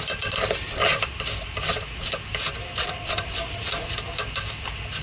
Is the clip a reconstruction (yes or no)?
no